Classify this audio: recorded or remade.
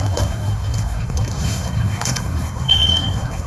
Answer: remade